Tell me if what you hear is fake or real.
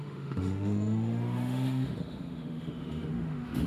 fake